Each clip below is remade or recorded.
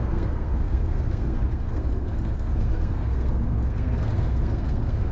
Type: remade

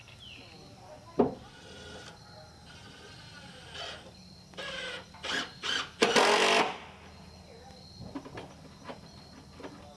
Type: recorded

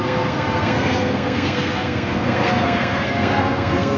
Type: remade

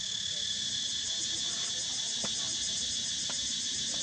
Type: recorded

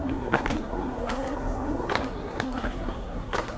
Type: remade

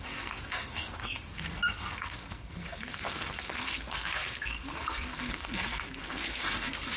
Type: remade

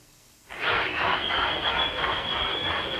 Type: remade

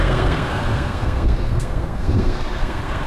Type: remade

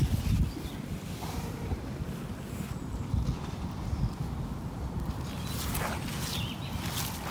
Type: recorded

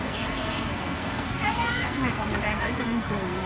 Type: remade